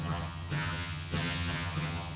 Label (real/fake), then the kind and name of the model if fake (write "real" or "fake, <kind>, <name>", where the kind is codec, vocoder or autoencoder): fake, vocoder, HiFi-GAN